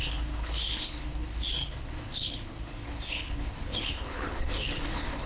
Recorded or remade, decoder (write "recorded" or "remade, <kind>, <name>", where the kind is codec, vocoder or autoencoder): remade, codec, HILCodec